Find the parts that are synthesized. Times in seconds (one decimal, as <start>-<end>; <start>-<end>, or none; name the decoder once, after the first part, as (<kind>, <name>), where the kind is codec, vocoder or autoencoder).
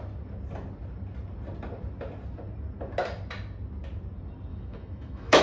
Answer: 4.5-5.4 (autoencoder, DAC-VAE)